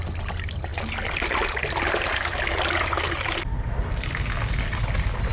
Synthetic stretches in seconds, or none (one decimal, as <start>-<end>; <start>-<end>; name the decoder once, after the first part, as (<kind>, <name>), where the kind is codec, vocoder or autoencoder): none